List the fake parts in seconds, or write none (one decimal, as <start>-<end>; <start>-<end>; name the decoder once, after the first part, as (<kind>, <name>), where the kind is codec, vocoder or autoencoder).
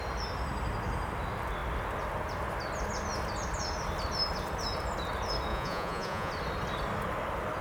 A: 5.5-6.3 (vocoder, Vocos)